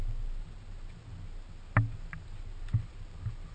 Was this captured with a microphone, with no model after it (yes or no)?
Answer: yes